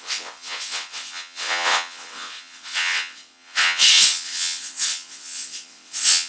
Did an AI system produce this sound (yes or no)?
yes